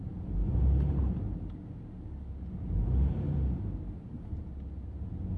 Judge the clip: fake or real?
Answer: real